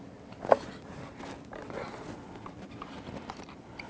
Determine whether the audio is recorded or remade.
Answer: recorded